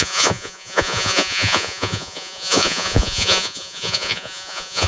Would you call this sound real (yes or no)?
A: no